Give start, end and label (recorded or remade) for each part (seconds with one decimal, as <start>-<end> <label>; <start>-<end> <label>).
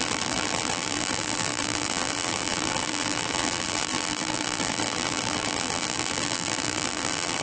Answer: 0.0-7.4 remade